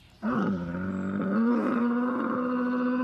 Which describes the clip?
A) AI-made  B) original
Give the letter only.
B